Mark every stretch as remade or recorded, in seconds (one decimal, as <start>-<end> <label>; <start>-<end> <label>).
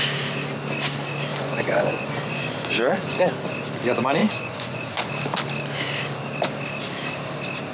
0.0-1.3 recorded; 1.3-3.2 remade; 3.2-4.2 recorded; 4.2-5.1 remade; 5.1-7.7 recorded